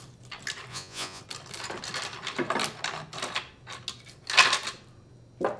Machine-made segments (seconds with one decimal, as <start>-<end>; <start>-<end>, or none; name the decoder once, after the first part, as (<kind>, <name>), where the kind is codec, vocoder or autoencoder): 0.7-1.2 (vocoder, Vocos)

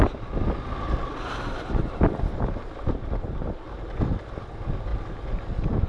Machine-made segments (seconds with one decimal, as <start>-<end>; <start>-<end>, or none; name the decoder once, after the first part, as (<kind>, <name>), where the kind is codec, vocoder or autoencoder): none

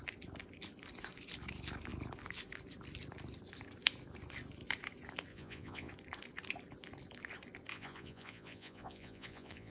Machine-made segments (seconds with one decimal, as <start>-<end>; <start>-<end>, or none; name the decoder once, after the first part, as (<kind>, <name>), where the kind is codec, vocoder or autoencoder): 5.3-5.9 (vocoder, Vocos); 7.7-9.7

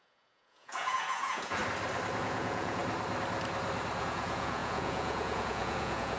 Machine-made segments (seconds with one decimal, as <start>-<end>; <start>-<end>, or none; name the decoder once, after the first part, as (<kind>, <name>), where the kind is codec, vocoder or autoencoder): 0.0-1.6 (vocoder, Vocos); 2.2-2.8; 4.0-6.2

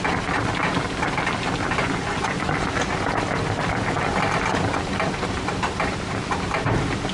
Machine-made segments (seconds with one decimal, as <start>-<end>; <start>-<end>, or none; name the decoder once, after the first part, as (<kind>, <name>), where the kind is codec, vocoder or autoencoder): 1.8-2.5 (vocoder, Vocos)